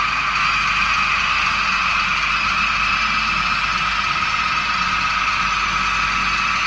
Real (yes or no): yes